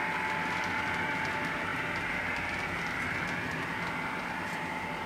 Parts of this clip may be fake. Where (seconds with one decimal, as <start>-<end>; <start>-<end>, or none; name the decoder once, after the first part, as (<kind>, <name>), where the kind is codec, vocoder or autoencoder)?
none

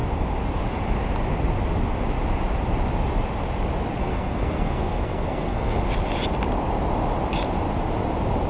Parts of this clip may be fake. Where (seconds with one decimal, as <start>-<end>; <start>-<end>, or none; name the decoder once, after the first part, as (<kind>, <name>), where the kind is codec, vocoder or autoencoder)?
4.0-5.8 (codec, SNAC)

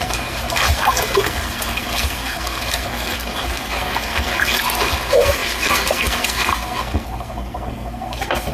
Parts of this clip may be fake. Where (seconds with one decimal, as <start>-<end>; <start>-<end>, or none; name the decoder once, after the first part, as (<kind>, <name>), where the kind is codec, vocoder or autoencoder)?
0.0-8.5 (codec, SNAC)

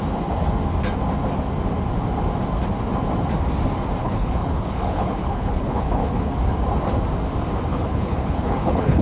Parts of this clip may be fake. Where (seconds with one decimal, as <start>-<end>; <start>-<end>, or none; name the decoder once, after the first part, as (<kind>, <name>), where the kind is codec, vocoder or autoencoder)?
4.0-6.3 (codec, HILCodec); 7.7-9.0

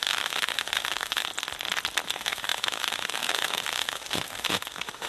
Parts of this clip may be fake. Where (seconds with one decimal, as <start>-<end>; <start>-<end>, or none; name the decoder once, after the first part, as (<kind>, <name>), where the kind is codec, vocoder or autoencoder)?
0.0-1.3 (autoencoder, DAC-VAE); 2.1-5.1